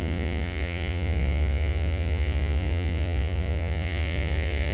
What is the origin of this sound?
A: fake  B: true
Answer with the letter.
A